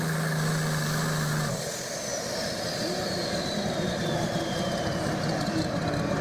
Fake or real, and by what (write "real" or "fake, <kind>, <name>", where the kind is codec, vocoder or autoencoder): real